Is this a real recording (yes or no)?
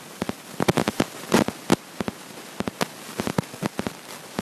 yes